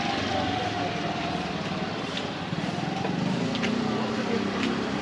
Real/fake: fake